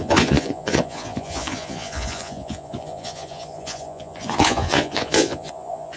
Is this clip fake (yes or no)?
yes